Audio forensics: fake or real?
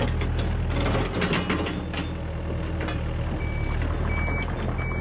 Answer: real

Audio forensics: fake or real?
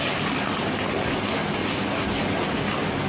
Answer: real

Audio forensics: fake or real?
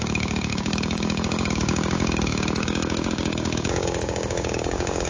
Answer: fake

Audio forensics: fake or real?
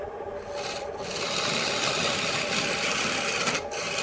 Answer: real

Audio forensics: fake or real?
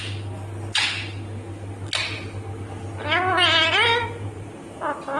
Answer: real